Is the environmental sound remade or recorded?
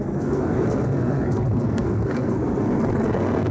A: remade